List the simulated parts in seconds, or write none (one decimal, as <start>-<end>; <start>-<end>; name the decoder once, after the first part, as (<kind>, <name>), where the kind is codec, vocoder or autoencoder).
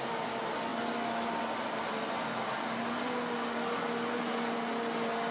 none